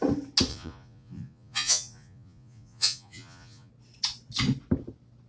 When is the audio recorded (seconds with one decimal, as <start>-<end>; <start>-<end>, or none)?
0.0-0.5; 3.7-5.3